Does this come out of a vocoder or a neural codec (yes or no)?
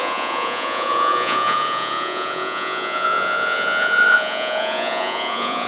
yes